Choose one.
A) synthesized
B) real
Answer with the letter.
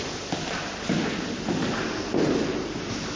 B